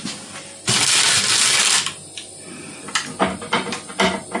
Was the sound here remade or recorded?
recorded